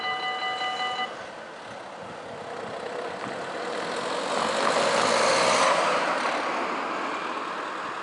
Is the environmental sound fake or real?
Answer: real